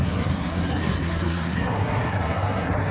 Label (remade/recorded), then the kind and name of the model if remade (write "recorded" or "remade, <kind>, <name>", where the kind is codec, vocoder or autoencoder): remade, codec, SNAC